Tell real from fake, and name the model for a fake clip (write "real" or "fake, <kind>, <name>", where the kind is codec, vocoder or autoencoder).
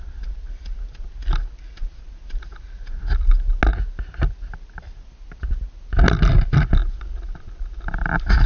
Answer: real